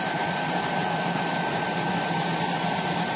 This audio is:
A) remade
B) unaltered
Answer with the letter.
B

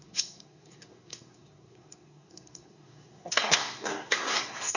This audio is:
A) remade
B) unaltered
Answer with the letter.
A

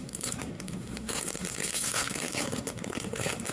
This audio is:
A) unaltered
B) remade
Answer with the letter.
B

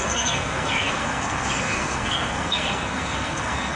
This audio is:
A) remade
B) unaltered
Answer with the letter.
A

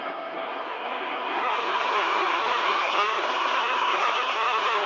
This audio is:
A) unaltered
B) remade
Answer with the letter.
B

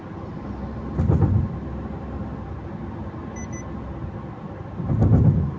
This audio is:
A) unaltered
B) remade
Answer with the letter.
A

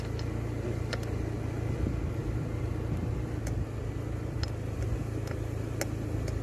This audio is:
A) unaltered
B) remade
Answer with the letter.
A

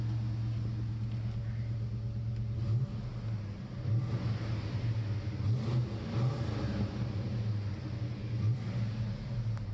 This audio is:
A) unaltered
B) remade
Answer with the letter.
A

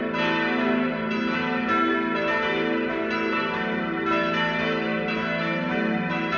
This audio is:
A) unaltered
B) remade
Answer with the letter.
A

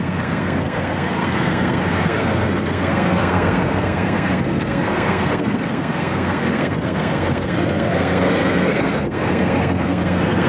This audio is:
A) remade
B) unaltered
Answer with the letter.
A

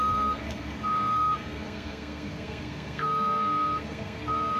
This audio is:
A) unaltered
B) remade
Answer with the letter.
B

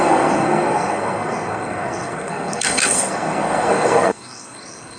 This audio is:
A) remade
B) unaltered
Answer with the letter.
A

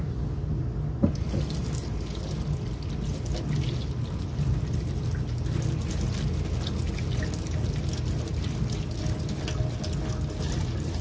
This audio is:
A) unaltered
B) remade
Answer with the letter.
A